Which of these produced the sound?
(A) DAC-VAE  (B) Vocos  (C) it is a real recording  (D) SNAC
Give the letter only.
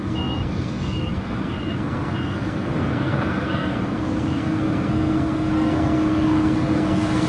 D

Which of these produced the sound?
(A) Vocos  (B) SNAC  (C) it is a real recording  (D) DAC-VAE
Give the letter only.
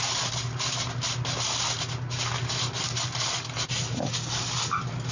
C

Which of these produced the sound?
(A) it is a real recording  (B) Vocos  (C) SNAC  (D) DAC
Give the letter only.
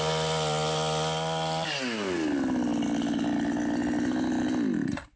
A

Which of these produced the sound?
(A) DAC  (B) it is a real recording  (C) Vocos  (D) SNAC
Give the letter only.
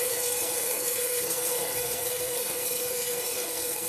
D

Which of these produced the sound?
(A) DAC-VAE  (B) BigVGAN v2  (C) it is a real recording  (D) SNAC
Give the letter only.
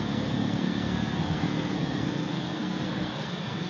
D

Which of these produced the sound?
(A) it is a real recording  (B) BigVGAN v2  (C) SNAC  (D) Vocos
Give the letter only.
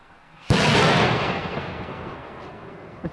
C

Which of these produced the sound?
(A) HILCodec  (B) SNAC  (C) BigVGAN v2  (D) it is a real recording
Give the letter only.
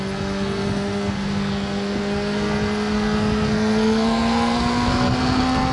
B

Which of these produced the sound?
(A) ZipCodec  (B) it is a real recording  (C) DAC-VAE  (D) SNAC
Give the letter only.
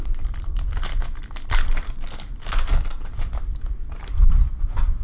B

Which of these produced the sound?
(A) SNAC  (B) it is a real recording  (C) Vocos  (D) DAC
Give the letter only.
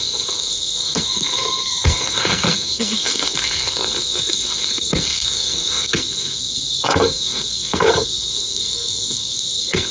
A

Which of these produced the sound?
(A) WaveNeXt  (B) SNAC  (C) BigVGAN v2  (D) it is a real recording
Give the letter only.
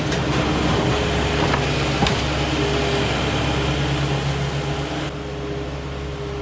D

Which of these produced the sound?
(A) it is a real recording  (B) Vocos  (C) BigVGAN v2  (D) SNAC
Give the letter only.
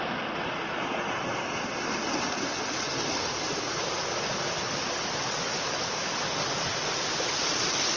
A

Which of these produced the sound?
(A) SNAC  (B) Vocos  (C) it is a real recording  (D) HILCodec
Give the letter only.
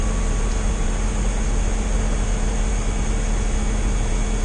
C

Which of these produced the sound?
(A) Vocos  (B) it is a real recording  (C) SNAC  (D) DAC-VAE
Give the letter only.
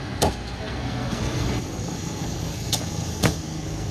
C